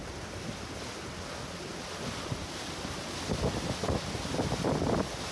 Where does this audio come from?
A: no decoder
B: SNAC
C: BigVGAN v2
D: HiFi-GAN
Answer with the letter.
A